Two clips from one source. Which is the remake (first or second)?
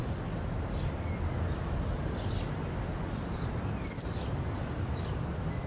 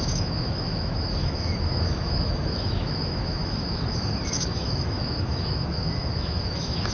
second